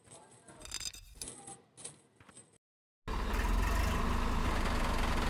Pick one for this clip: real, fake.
real